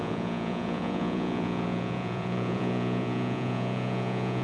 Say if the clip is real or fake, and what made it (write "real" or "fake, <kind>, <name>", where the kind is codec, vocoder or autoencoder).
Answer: fake, vocoder, Vocos